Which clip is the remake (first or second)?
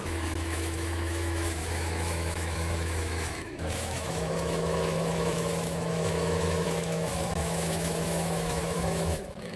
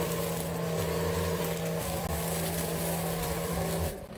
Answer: first